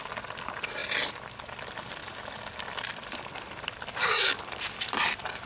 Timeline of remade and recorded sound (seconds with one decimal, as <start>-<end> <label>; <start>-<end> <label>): 0.0-0.8 recorded; 0.8-1.4 remade; 1.4-2.0 recorded; 2.0-5.5 remade